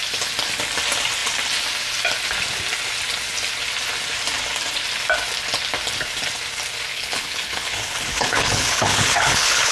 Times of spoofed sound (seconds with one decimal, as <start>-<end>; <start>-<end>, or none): 6.9-9.7